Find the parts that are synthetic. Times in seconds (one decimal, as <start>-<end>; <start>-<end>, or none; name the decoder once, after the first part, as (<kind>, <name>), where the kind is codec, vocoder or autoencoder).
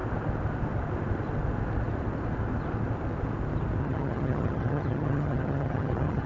3.8-6.3 (vocoder, HiFi-GAN)